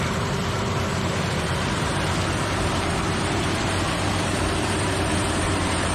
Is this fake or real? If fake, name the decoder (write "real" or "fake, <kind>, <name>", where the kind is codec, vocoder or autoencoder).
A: fake, vocoder, BigVGAN v2